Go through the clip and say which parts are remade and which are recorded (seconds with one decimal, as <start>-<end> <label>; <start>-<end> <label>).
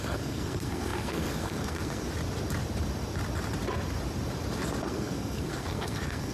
0.0-2.1 remade; 2.1-4.8 recorded; 4.8-6.3 remade